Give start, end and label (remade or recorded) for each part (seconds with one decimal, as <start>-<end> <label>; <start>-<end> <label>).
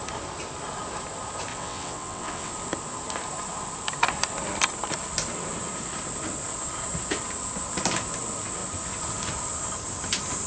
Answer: 0.0-1.5 recorded; 1.5-2.5 remade; 2.5-10.5 recorded